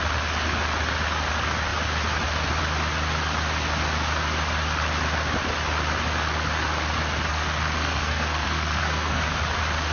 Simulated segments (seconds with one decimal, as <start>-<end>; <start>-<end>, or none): 7.3-9.2